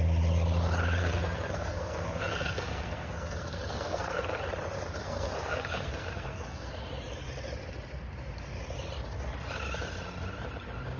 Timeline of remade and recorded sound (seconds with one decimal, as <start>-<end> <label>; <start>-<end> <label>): 0.0-1.0 recorded; 1.0-4.4 remade; 4.4-5.0 recorded; 5.0-6.7 remade; 6.7-11.0 recorded